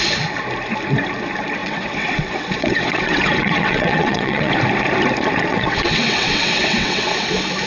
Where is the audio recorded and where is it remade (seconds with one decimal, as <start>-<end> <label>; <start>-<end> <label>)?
0.0-1.6 recorded; 1.6-4.5 remade; 4.5-5.5 recorded; 5.5-7.3 remade; 7.3-7.7 recorded